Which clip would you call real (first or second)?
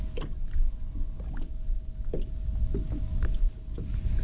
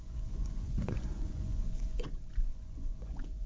first